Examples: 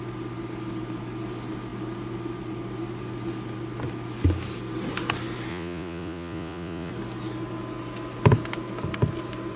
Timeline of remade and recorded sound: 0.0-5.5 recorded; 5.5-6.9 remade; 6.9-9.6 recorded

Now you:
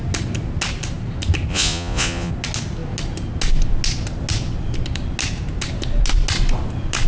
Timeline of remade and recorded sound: 0.0-1.5 recorded; 1.5-2.3 remade; 2.3-7.1 recorded